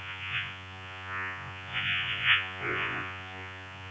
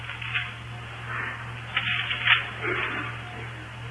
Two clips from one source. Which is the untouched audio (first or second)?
second